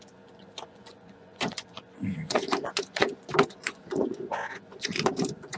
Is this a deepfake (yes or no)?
yes